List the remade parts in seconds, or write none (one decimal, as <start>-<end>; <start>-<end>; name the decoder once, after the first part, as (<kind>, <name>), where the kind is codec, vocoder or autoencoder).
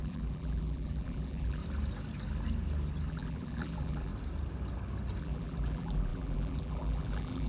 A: 0.0-1.6 (vocoder, BigVGAN v2); 3.1-4.1; 5.2-7.5